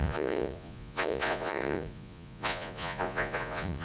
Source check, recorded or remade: remade